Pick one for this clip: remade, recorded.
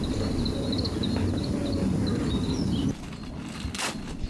recorded